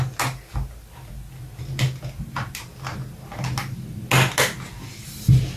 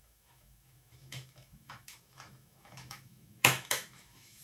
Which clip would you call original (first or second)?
first